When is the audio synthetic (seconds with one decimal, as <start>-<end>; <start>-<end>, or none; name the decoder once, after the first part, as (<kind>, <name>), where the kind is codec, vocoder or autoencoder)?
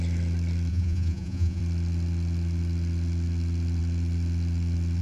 0.7-1.6 (vocoder, Vocos)